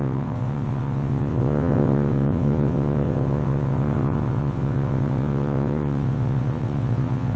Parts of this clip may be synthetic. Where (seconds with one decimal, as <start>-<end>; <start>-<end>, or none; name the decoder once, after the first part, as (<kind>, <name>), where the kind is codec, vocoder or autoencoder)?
0.0-7.4 (vocoder, WaveNeXt)